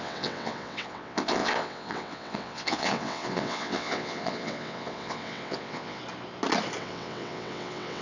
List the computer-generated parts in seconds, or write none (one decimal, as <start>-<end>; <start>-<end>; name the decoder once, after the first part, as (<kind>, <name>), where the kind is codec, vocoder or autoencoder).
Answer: 0.0-6.0 (vocoder, WaveNeXt); 6.8-8.0